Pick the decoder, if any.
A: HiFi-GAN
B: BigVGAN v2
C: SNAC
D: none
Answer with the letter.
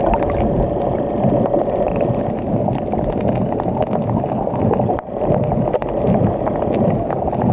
D